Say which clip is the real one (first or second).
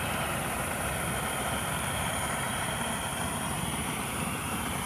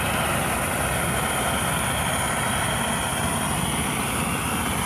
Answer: second